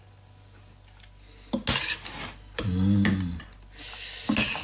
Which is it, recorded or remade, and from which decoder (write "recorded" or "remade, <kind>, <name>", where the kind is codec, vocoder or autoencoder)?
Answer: recorded